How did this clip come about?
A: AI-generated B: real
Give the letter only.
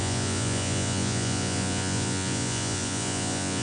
A